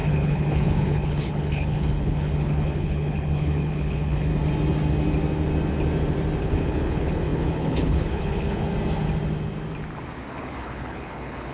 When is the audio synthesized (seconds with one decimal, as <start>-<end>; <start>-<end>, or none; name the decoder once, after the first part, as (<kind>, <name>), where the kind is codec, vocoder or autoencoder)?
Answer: 0.0-4.3 (codec, HILCodec); 6.4-8.7; 10.3-11.5

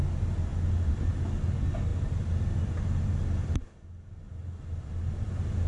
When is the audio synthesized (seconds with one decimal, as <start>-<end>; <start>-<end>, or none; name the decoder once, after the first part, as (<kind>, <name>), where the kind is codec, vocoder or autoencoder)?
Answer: none

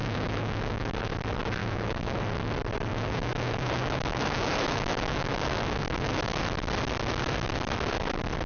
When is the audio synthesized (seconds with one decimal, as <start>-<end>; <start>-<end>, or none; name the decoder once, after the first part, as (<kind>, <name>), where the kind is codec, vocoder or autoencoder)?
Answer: 0.0-1.1 (autoencoder, DAC-VAE); 1.6-2.2; 2.9-6.4

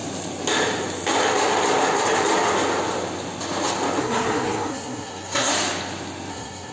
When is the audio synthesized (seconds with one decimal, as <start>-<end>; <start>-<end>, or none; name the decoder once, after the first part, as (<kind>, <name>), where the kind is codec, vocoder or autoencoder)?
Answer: 4.0-5.5 (codec, SNAC); 6.3-6.7